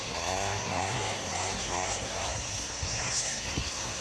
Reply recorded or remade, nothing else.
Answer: remade